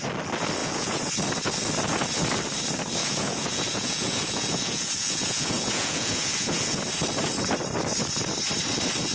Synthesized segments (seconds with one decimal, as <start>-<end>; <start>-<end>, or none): 0.6-1.1; 3.0-6.8